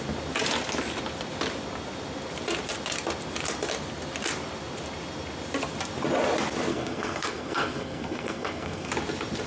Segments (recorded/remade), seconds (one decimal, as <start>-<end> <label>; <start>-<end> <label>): 0.0-6.7 recorded; 6.7-8.9 remade; 8.9-9.5 recorded